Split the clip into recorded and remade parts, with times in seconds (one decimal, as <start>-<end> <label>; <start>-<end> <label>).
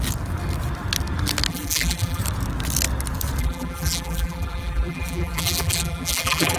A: 0.0-1.5 recorded; 1.5-2.2 remade; 2.2-3.4 recorded; 3.4-6.6 remade